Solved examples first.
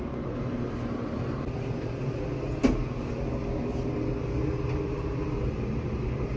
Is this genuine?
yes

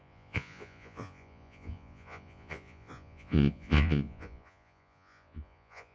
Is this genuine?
no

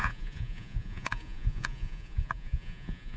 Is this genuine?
no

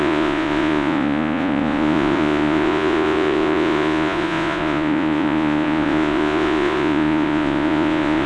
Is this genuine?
no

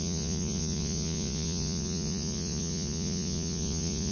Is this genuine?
no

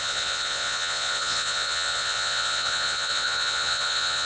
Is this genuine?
no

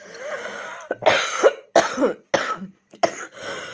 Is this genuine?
yes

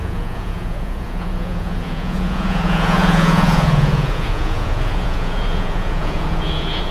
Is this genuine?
no